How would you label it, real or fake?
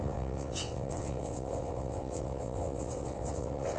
fake